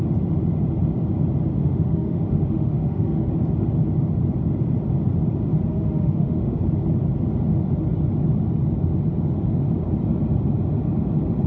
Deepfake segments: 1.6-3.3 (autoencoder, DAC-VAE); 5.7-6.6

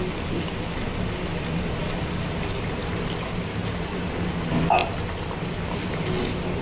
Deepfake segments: 2.8-4.1 (vocoder, BigVGAN v2)

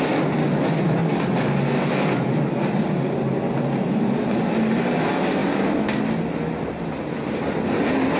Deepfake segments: none

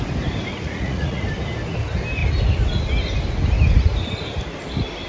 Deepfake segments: 0.5-1.2 (vocoder, Vocos)

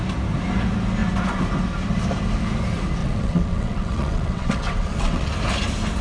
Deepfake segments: 3.0-5.3 (vocoder, WaveNeXt)

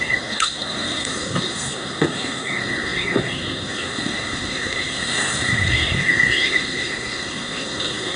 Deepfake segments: 0.0-8.2 (codec, SNAC)

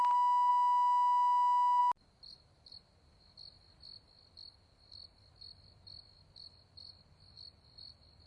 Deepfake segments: none